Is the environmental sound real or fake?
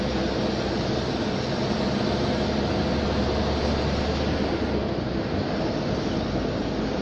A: real